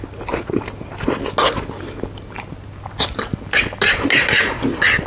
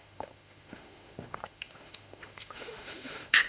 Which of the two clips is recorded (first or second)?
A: first